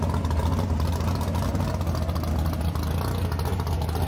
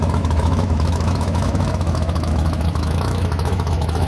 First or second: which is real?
first